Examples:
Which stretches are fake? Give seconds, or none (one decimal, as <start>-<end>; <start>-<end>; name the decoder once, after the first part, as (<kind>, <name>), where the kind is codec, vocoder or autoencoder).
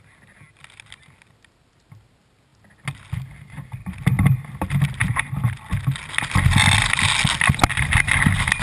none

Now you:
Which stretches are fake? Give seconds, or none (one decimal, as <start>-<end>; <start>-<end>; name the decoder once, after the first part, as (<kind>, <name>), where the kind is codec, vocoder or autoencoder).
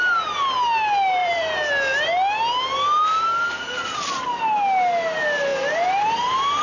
1.2-1.7 (vocoder, BigVGAN v2); 5.5-6.6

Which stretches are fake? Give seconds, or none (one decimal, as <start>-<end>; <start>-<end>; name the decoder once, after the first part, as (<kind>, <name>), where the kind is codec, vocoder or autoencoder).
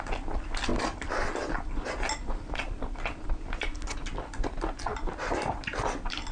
none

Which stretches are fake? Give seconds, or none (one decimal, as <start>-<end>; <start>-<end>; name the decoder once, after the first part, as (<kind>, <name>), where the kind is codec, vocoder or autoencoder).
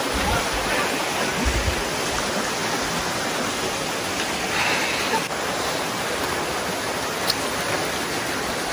none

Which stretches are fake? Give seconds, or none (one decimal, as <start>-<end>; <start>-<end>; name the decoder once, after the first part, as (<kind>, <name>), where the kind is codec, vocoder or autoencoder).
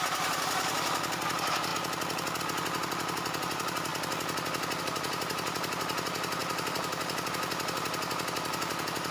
0.0-1.7 (vocoder, BigVGAN v2); 2.4-3.9; 4.8-9.1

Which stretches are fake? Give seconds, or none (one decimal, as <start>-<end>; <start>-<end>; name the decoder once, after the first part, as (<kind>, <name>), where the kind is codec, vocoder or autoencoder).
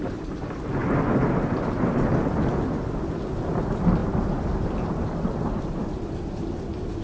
0.0-0.8 (vocoder, BigVGAN v2); 3.0-7.0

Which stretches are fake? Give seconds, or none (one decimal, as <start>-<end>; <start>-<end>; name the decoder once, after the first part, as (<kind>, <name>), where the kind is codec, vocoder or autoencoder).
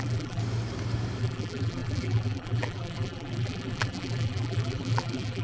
0.0-0.4 (vocoder, BigVGAN v2); 1.2-5.4